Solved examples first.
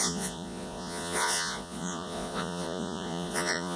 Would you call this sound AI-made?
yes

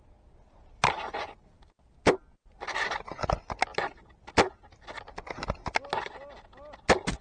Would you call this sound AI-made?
no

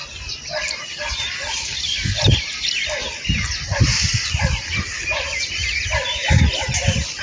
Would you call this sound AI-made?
no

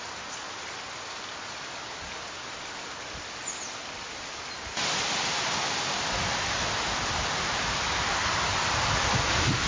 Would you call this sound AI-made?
no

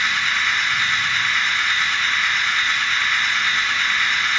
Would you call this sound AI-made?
no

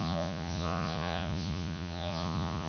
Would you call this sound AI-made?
yes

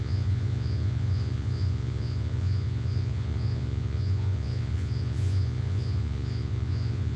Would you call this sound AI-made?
yes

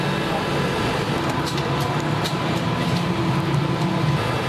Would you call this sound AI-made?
no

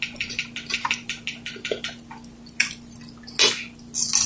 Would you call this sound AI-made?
no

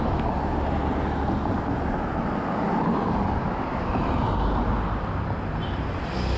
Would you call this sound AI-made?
no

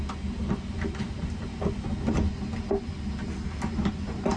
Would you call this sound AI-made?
no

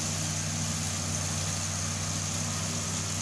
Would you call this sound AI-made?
no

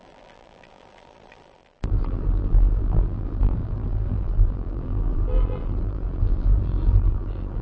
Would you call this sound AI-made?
yes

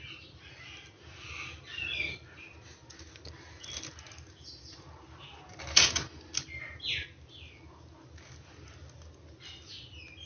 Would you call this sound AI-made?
no